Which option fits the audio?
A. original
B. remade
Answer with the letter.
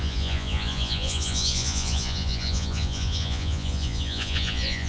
B